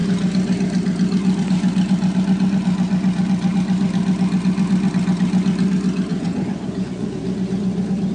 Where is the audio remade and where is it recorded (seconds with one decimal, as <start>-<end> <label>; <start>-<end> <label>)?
0.0-6.1 recorded; 6.1-7.2 remade; 7.2-8.1 recorded